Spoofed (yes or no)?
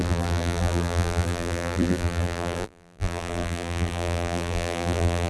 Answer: yes